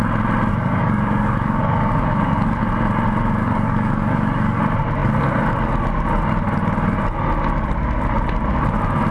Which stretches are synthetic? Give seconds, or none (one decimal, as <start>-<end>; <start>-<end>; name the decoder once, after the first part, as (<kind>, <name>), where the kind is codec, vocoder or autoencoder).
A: 0.5-2.6 (codec, DAC); 3.4-4.6